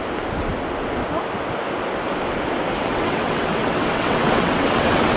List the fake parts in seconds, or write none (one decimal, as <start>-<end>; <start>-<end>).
2.8-5.2